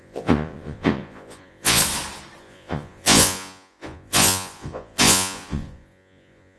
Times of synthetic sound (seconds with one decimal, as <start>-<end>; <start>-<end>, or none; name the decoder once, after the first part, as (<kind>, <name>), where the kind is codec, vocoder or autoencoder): 0.0-1.8 (vocoder, Vocos); 2.4-6.6